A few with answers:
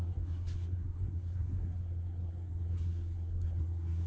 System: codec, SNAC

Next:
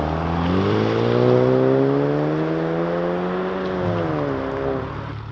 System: none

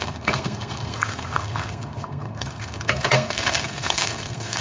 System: codec, SNAC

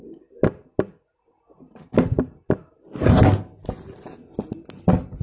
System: none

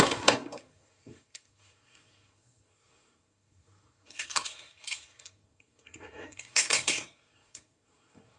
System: codec, SNAC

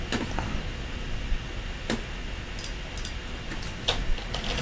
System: none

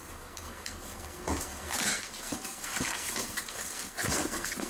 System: codec, SNAC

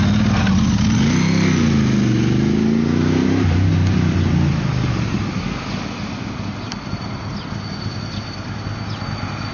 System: none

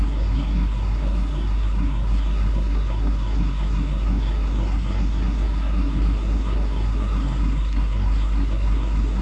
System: codec, SNAC